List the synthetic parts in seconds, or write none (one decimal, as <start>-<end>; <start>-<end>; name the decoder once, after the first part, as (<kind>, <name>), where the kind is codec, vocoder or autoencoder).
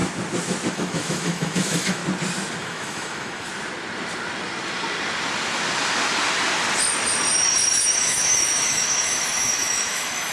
0.7-2.0 (autoencoder, DAC-VAE); 2.6-3.5; 7.8-10.3